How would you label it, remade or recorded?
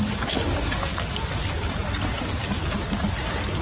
recorded